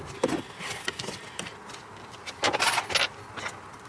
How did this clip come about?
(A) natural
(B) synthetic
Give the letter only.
A